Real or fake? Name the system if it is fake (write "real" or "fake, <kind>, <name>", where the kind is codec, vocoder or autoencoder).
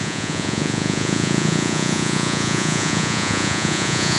fake, vocoder, Vocos